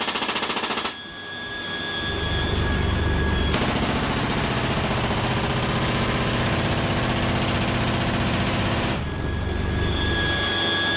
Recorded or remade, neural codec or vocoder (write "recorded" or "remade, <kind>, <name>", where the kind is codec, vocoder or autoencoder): recorded